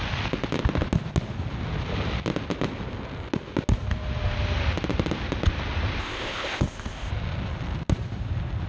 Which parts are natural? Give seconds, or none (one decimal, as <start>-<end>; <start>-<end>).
0.0-6.0; 7.1-8.7